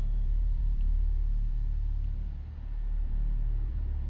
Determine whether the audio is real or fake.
fake